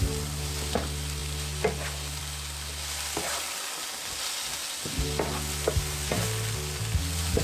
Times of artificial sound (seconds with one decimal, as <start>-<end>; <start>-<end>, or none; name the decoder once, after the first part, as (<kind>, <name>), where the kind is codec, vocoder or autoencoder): none